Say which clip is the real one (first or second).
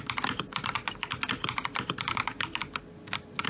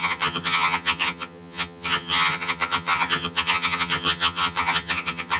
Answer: first